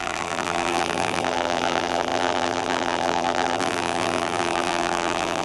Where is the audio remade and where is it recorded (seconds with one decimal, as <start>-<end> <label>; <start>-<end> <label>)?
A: 0.0-5.4 remade